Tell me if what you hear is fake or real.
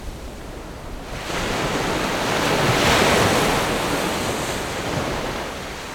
real